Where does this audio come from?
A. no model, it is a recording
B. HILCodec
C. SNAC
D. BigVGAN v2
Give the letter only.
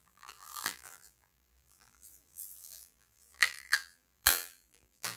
D